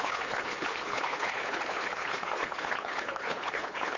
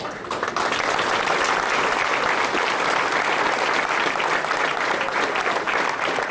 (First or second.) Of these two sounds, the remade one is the first